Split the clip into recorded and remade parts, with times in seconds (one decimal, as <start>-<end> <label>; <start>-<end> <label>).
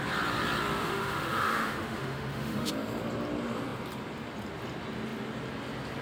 0.0-0.8 recorded; 0.8-2.7 remade; 2.7-6.0 recorded